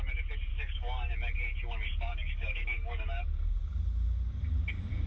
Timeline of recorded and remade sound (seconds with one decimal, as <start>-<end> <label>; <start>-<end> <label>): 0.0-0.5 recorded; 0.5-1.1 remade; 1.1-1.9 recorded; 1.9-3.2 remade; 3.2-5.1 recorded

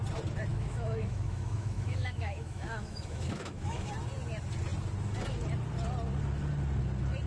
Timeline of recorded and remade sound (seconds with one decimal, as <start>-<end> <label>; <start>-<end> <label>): 0.0-0.5 recorded; 0.5-3.9 remade; 3.9-7.3 recorded

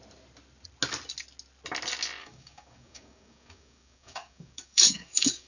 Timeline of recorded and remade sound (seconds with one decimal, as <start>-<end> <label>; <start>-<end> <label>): 0.0-2.2 recorded; 2.2-5.5 remade

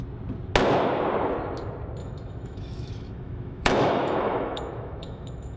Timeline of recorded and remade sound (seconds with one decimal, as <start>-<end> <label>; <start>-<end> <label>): 0.0-2.0 recorded; 2.0-5.6 remade

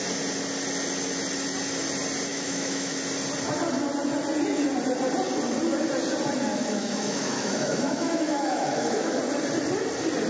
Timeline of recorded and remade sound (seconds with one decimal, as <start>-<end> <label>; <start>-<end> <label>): 0.0-2.3 recorded; 2.3-3.0 remade; 3.0-6.5 recorded; 6.5-9.2 remade; 9.2-10.3 recorded

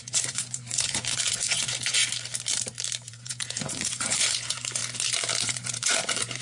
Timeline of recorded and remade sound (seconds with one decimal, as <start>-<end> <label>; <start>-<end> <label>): 0.0-2.0 remade; 2.0-3.1 recorded; 3.1-4.8 remade; 4.8-5.4 recorded; 5.4-6.4 remade